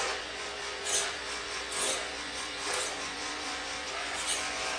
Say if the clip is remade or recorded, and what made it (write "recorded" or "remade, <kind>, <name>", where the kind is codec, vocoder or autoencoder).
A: remade, vocoder, Vocos